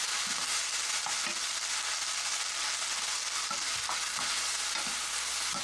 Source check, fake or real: real